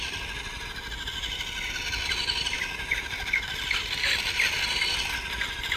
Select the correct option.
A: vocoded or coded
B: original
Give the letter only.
B